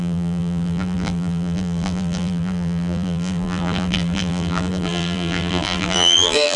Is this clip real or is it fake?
fake